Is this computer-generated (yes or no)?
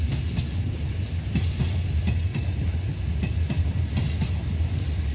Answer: no